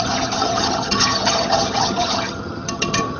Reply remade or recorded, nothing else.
remade